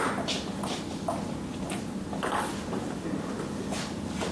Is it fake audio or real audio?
real